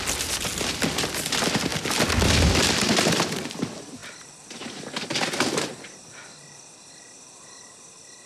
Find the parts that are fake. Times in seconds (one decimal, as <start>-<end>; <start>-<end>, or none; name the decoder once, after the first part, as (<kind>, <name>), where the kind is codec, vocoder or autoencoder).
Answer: none